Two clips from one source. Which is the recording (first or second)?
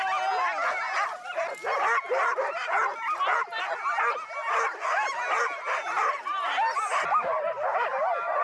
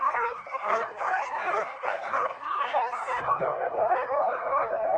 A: first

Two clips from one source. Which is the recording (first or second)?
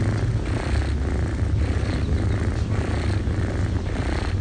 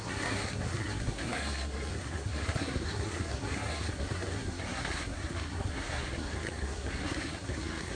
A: first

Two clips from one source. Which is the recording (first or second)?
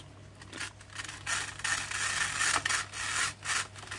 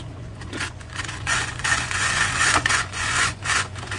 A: first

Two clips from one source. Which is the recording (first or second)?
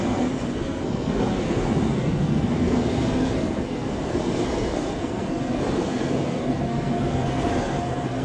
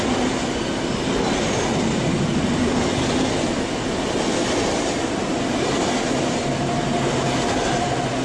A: second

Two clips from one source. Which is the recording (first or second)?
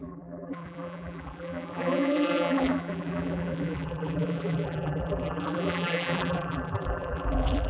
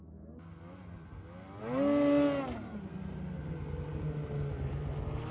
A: second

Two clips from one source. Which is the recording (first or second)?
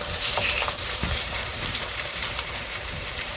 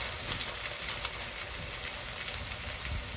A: second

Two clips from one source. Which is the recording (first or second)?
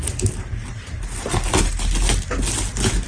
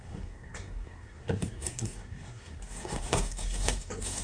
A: first